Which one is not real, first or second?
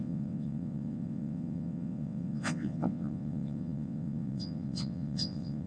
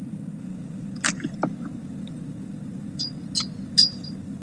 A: first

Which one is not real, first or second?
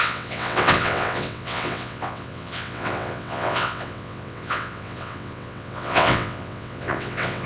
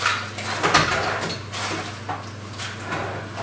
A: first